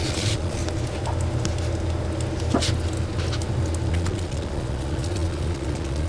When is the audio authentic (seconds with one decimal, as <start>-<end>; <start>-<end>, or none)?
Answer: 0.6-3.9